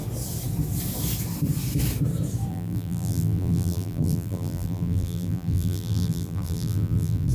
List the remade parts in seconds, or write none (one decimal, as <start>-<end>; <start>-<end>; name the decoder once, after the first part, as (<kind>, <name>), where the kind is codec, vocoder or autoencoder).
2.5-7.3 (vocoder, BigVGAN v2)